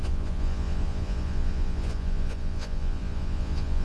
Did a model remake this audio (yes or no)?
yes